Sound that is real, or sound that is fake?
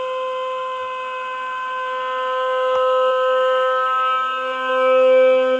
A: real